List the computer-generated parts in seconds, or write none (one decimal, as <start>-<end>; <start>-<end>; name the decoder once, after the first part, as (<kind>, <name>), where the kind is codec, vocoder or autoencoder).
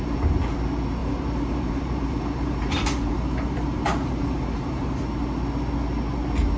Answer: 1.0-5.0 (vocoder, BigVGAN v2)